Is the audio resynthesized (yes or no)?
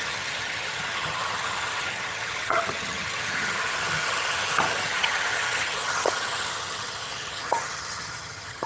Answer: yes